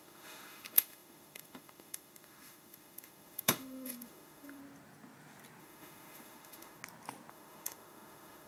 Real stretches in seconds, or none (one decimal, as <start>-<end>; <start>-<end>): 4.6-5.6; 6.8-7.3